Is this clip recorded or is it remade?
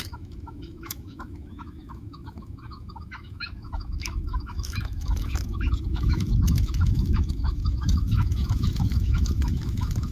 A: remade